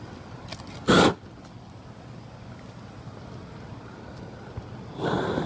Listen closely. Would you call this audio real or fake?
real